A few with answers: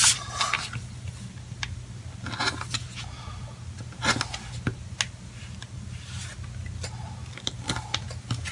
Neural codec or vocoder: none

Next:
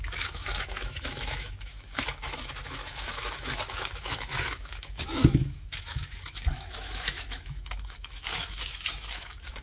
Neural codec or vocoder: autoencoder, DAC-VAE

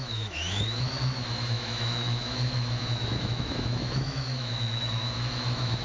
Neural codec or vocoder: autoencoder, DAC-VAE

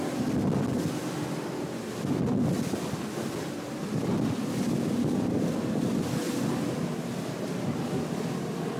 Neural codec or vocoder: none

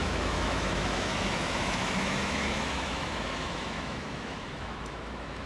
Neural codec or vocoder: autoencoder, DAC-VAE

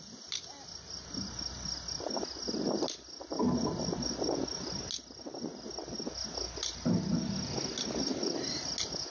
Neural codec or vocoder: none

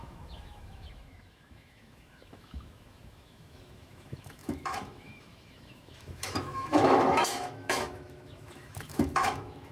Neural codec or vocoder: autoencoder, DAC-VAE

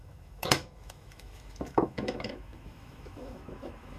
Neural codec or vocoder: autoencoder, DAC-VAE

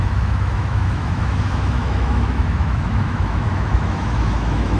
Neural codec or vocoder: autoencoder, DAC-VAE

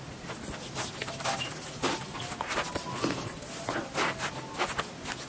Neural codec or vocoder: none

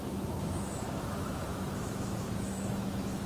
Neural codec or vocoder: autoencoder, DAC-VAE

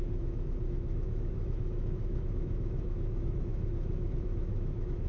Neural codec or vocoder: autoencoder, DAC-VAE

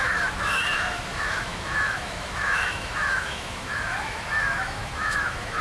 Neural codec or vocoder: autoencoder, DAC-VAE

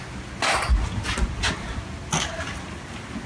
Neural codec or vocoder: none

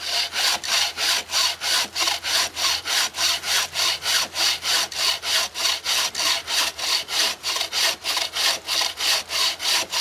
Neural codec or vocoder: none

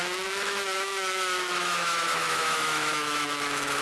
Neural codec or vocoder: autoencoder, DAC-VAE